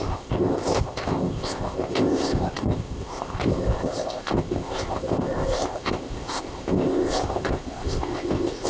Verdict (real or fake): fake